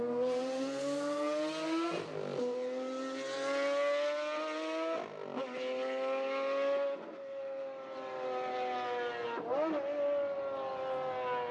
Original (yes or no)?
yes